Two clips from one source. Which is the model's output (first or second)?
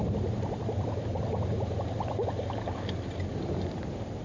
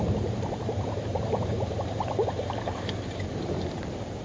second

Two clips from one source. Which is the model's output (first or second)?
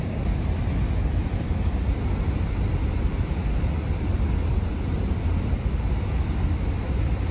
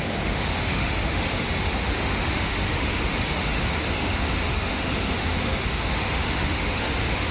second